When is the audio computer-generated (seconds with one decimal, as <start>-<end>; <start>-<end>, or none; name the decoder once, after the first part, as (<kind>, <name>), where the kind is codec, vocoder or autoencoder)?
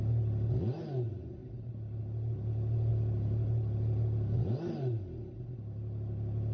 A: none